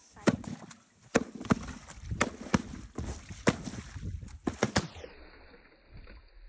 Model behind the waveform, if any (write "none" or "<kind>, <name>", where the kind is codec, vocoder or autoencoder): none